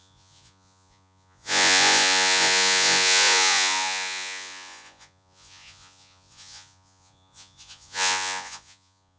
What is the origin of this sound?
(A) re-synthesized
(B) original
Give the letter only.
A